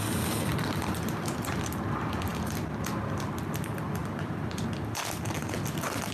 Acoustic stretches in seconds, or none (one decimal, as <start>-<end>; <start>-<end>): 0.0-4.0; 4.6-6.1